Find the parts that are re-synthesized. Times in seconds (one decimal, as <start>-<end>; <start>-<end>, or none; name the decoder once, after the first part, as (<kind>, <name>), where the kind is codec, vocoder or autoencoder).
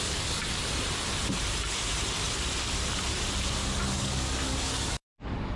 0.0-0.4 (codec, DAC); 3.8-5.6